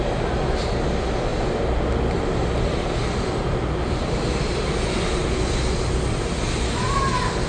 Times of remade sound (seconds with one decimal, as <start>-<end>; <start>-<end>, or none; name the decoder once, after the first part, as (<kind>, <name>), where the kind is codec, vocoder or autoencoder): none